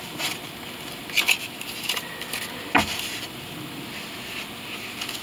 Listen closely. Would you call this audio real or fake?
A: real